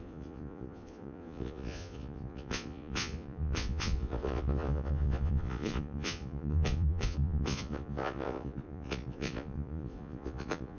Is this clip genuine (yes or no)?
no